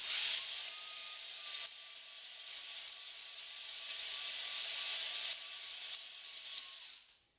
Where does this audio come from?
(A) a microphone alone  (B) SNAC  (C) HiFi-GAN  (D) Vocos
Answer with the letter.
A